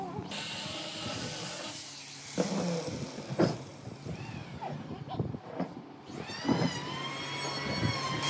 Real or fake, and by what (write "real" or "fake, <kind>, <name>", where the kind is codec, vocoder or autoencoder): real